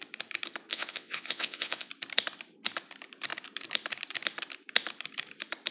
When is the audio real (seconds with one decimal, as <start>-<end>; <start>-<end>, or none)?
0.0-0.7; 1.9-5.7